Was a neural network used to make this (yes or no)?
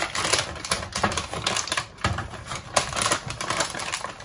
yes